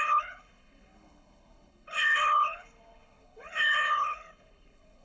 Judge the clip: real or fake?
fake